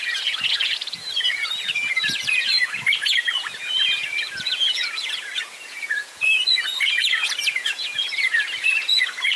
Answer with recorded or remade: remade